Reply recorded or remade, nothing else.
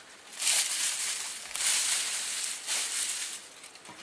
recorded